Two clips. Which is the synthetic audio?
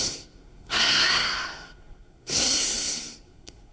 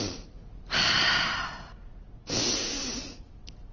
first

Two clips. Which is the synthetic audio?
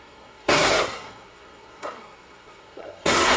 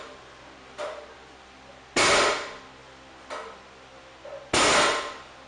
first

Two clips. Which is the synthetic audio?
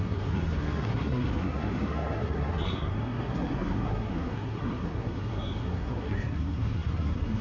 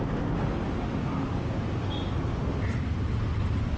first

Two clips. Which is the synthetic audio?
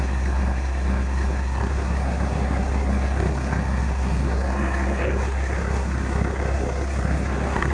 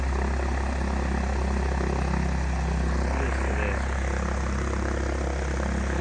first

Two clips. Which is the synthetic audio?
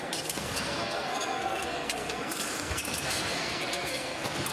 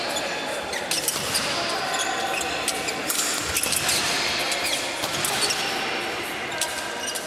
first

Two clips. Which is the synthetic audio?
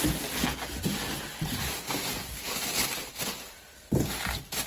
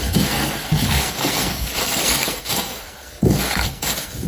second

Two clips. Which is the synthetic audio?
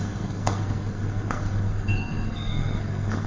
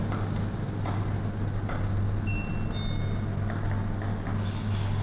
first